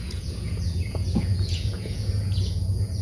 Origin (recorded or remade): remade